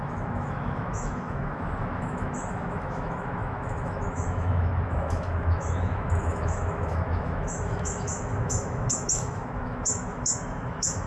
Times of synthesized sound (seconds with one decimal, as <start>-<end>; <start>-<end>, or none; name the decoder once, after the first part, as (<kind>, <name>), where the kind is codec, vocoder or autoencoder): 0.0-11.1 (autoencoder, DAC-VAE)